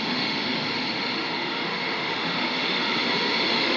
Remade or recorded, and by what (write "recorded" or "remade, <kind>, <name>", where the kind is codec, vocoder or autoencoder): remade, autoencoder, DAC-VAE